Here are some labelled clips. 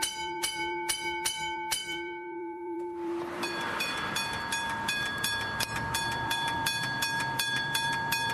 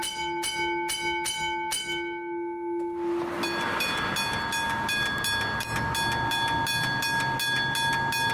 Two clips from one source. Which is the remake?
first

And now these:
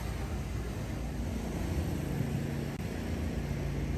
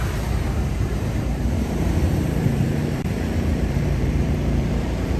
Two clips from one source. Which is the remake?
second